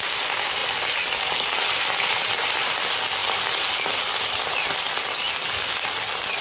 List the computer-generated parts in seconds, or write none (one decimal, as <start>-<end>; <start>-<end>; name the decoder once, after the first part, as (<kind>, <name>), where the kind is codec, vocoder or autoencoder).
none